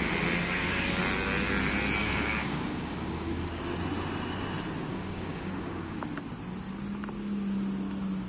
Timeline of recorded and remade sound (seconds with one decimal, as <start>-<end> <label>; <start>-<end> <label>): 0.0-0.4 recorded; 0.4-1.0 remade; 1.0-2.0 recorded; 2.0-3.6 remade; 3.6-4.9 recorded; 4.9-6.0 remade; 6.0-8.3 recorded